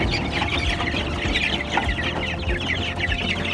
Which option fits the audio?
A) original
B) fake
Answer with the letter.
A